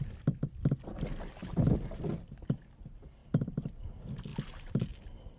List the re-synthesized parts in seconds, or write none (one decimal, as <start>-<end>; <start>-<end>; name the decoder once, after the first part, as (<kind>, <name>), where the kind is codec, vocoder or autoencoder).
3.2-3.8 (vocoder, BigVGAN v2); 4.3-5.4